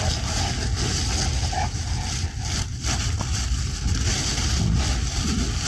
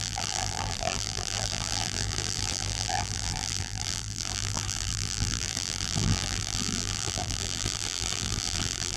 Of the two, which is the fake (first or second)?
second